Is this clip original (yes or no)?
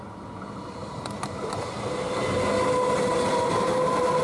yes